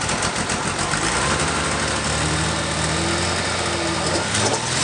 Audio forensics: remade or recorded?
recorded